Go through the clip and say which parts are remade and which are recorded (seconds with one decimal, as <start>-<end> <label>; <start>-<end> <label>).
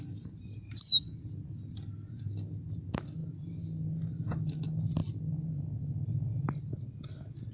0.0-7.5 recorded